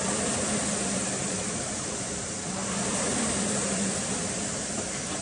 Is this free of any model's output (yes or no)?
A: no